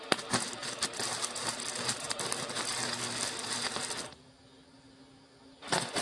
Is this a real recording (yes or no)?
yes